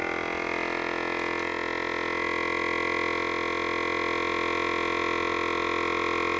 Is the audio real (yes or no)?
yes